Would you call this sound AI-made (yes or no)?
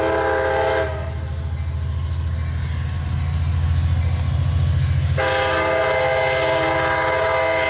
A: no